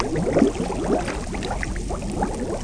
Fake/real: real